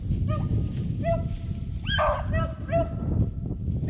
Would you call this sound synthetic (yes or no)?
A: no